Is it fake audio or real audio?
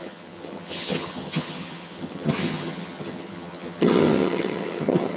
fake